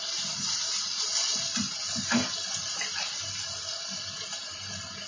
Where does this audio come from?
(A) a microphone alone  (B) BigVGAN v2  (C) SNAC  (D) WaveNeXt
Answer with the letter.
A